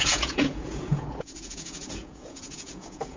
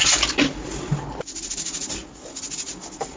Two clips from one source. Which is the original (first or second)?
second